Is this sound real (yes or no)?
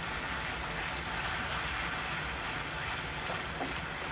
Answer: yes